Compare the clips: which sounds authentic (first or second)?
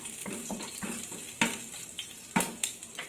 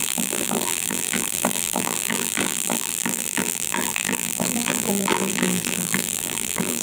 first